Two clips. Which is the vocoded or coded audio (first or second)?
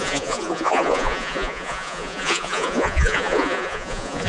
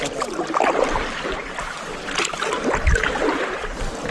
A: first